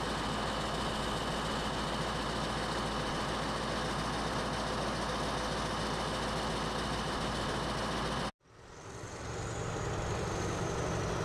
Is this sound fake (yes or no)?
no